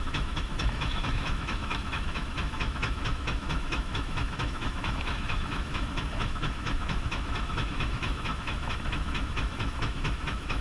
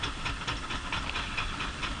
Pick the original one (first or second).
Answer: second